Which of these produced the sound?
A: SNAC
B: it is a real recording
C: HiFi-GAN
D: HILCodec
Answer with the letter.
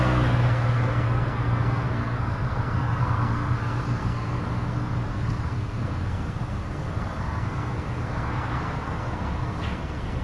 A